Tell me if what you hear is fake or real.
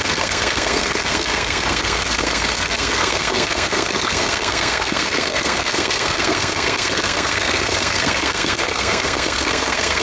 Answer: fake